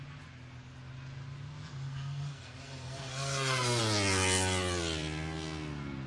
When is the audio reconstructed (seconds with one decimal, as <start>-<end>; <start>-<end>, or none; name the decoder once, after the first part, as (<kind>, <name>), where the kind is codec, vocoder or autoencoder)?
1.7-3.8 (codec, SNAC)